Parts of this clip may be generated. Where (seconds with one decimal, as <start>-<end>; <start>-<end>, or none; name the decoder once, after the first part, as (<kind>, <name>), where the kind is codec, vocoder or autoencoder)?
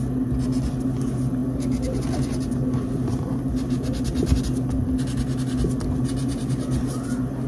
none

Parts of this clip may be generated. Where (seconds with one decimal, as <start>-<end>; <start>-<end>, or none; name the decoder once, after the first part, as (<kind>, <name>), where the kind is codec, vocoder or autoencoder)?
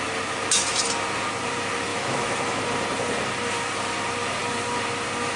1.9-2.6 (autoencoder, DAC-VAE)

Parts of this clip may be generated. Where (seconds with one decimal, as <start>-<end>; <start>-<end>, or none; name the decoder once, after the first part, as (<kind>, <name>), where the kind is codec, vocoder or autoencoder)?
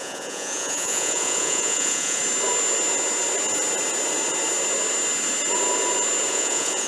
0.0-2.2 (vocoder, Vocos); 6.3-6.9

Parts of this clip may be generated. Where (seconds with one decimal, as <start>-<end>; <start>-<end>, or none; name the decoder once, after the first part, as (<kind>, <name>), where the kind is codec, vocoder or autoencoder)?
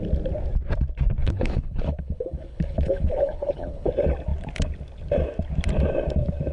1.2-3.9 (codec, HILCodec)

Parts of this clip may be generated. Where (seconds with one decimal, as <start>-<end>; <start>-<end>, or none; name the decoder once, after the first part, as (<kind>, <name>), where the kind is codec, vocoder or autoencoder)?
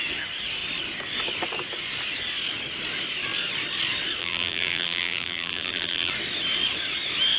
4.2-6.1 (vocoder, BigVGAN v2)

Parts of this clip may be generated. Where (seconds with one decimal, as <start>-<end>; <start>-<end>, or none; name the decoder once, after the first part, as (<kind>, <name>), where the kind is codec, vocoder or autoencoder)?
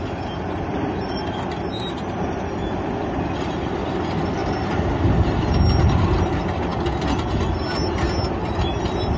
2.6-3.8 (vocoder, BigVGAN v2); 4.4-5.5